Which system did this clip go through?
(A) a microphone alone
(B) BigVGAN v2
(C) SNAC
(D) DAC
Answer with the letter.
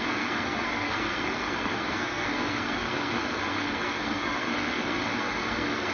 C